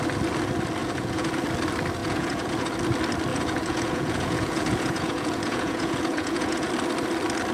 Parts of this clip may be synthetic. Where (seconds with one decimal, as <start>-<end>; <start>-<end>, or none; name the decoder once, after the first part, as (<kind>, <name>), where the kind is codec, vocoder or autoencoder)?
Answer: 0.8-1.3 (vocoder, Vocos); 2.0-2.7; 3.3-6.7